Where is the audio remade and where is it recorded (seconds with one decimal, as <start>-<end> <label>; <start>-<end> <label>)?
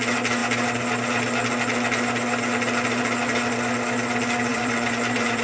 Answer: 0.0-4.5 recorded; 4.5-5.4 remade